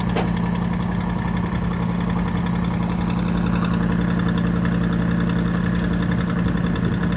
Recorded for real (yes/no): yes